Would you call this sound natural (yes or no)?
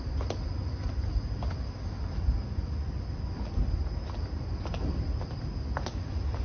yes